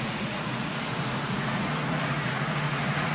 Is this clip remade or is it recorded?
remade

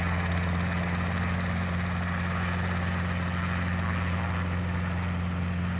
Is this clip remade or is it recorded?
recorded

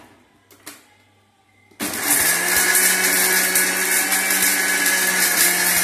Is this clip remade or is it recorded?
recorded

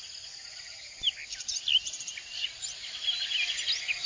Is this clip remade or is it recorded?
recorded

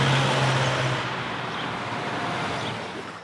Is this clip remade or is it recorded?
recorded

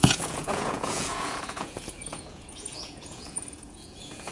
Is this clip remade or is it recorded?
remade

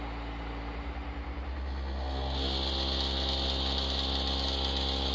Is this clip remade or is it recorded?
recorded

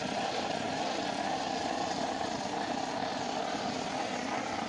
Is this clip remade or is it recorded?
recorded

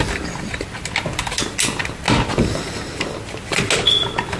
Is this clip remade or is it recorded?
recorded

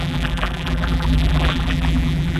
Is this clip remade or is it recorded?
remade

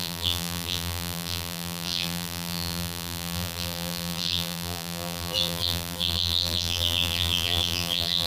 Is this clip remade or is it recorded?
remade